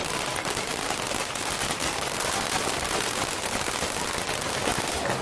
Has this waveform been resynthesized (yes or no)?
no